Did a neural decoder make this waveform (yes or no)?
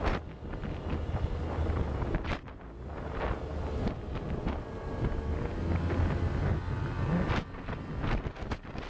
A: no